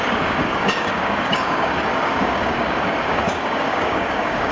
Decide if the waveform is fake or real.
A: fake